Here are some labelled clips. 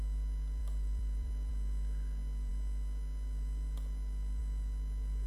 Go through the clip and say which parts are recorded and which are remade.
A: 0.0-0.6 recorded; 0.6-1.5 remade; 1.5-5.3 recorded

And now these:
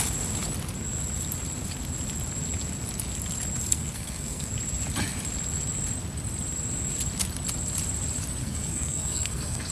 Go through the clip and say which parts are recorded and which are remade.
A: 0.0-3.7 recorded; 3.7-4.5 remade; 4.5-8.4 recorded; 8.4-9.7 remade

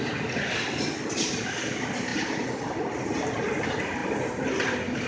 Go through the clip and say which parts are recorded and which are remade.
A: 0.0-5.1 recorded

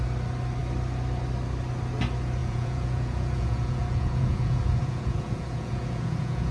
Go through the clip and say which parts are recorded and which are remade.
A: 0.0-2.4 recorded; 2.4-6.5 remade

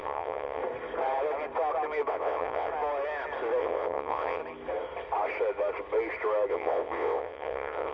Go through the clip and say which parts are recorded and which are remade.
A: 0.0-0.6 remade; 0.6-2.1 recorded; 2.1-2.7 remade; 2.7-3.6 recorded; 3.6-4.4 remade; 4.4-6.5 recorded; 6.5-7.9 remade

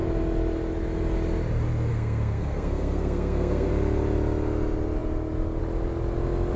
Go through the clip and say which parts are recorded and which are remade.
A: 0.0-1.9 recorded; 1.9-3.7 remade; 3.7-6.6 recorded

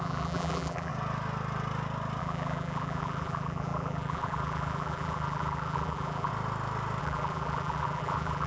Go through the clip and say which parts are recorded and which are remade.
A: 0.0-0.9 remade; 0.9-2.2 recorded; 2.2-6.3 remade; 6.3-7.0 recorded; 7.0-8.5 remade

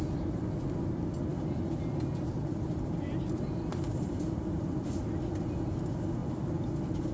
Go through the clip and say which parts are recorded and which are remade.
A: 0.0-1.3 recorded; 1.3-5.1 remade; 5.1-6.2 recorded; 6.2-7.1 remade